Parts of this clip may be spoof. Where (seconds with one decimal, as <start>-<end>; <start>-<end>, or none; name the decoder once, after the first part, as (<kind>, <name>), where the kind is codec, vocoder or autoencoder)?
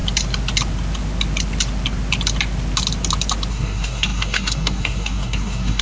3.5-5.8 (codec, SNAC)